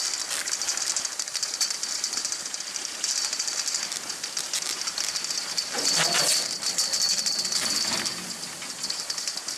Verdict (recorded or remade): recorded